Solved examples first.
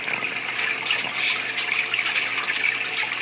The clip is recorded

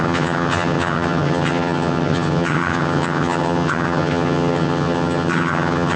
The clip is remade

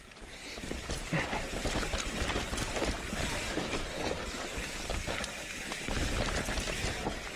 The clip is remade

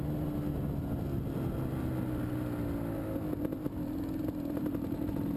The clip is recorded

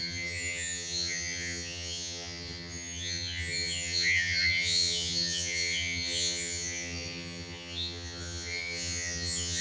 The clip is remade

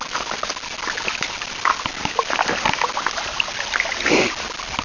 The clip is recorded